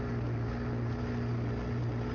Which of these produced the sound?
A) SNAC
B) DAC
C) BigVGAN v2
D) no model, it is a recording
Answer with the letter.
D